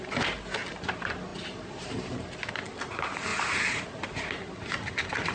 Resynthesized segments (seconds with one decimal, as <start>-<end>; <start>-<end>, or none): 3.3-4.3